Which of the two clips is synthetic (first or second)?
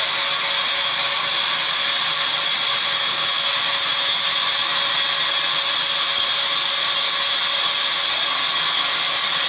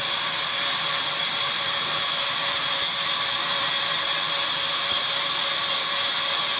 second